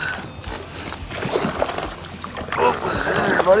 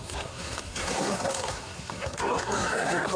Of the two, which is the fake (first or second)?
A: second